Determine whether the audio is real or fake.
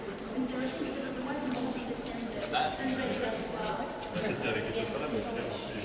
real